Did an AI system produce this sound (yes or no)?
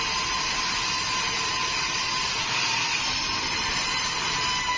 no